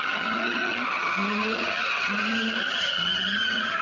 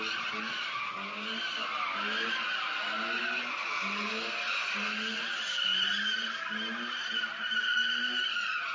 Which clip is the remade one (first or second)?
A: first